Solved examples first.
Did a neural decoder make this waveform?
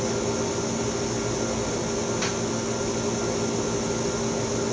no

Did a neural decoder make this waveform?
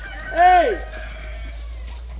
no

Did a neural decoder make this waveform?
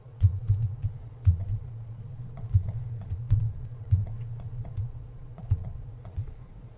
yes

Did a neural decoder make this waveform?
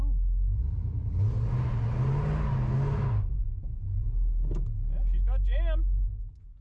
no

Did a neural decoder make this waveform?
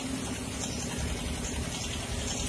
no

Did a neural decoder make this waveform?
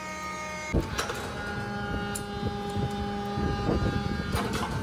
no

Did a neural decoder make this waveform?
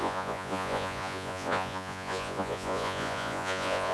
yes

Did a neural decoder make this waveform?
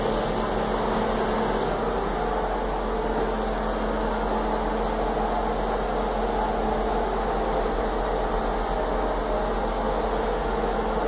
no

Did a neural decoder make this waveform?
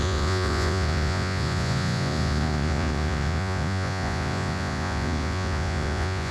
yes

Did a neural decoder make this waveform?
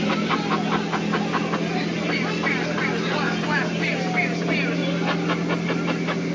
no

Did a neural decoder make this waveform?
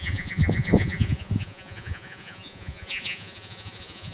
yes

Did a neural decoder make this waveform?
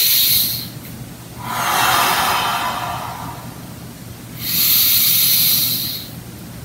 no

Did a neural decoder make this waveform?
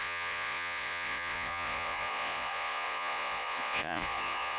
yes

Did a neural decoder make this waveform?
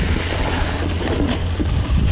no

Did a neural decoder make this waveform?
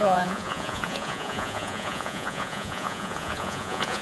yes